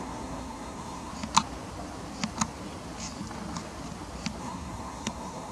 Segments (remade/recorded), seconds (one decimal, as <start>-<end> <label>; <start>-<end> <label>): 0.0-1.1 remade; 1.1-4.4 recorded; 4.4-5.5 remade